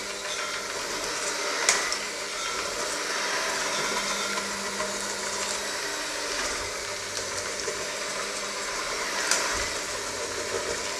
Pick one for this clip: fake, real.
real